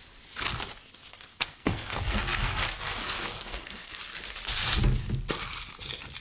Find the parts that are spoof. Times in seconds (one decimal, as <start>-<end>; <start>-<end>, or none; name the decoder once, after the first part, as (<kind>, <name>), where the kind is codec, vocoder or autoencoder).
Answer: 1.1-4.0 (codec, SNAC)